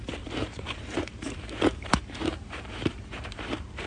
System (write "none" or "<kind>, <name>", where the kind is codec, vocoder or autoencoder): vocoder, BigVGAN v2